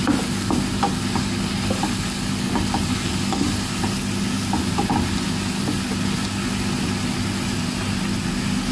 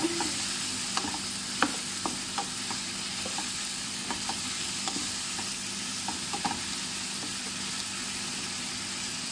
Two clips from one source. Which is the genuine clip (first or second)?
first